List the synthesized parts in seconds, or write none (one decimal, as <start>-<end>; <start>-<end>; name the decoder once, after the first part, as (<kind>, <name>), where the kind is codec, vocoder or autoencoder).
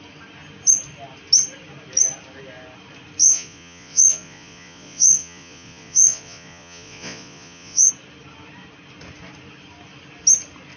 3.2-7.9 (vocoder, Vocos)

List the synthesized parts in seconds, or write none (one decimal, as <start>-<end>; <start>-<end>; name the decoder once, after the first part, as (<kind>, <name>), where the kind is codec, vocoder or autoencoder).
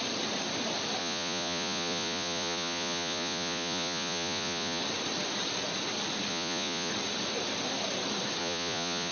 1.0-4.8 (vocoder, Vocos); 6.3-6.9; 8.4-9.1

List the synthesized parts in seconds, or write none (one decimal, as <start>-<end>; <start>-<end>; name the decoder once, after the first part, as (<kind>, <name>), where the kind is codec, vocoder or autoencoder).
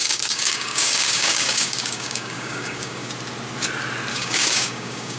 0.0-3.1 (codec, DAC); 4.1-5.2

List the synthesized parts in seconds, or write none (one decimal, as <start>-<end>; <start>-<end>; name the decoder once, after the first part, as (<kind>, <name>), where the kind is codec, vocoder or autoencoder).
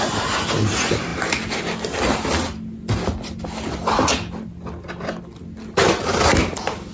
none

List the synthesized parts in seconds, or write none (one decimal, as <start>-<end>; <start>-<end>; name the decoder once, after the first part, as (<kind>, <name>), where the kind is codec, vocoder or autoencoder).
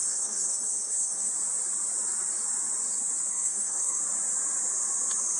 0.0-1.3 (codec, SNAC); 3.3-4.0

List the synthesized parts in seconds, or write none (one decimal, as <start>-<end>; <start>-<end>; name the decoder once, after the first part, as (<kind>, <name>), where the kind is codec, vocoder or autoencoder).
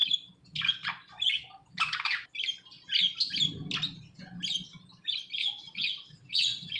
5.4-6.8 (vocoder, WaveNeXt)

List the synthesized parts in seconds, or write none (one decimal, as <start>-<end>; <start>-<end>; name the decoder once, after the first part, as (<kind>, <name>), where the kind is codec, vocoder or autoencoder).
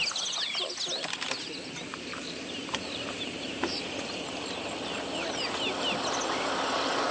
1.9-3.8 (vocoder, BigVGAN v2)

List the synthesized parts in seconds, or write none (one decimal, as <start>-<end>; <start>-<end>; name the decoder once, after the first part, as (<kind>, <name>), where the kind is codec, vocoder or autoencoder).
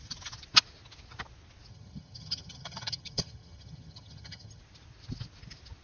1.7-4.6 (vocoder, HiFi-GAN)